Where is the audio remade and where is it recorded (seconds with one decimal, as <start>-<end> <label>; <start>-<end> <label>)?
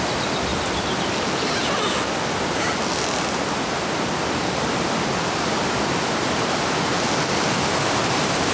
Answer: 0.0-8.5 recorded